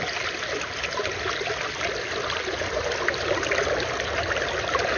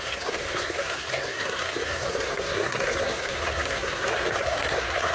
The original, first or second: first